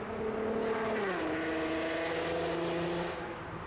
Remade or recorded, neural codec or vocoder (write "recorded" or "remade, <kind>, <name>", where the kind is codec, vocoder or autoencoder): recorded